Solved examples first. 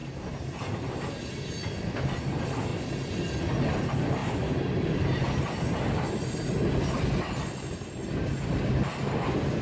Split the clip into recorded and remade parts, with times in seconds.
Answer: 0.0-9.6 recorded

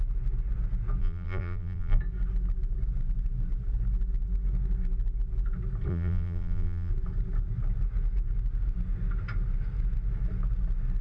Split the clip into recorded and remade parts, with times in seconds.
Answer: 0.0-1.0 recorded; 1.0-2.0 remade; 2.0-5.9 recorded; 5.9-6.9 remade; 6.9-11.0 recorded

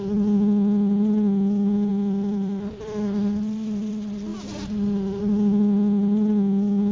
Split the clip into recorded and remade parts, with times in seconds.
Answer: 0.0-1.9 recorded; 1.9-3.9 remade; 3.9-6.9 recorded